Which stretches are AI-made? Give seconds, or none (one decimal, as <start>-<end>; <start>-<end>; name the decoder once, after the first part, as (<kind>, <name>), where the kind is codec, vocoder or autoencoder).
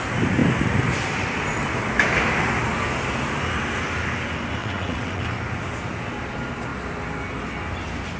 4.6-5.2 (vocoder, WaveNeXt)